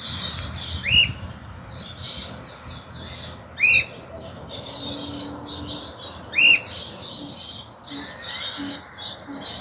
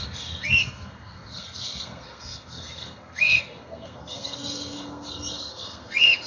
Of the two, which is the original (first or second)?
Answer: first